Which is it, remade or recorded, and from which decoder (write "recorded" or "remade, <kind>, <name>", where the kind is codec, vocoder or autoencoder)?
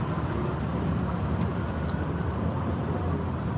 recorded